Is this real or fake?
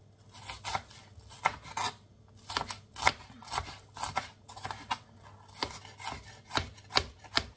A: real